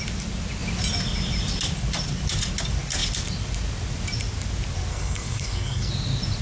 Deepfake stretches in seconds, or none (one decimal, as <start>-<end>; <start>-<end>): 4.9-5.9